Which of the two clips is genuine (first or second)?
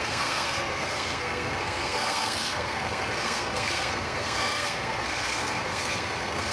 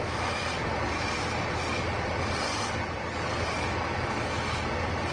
second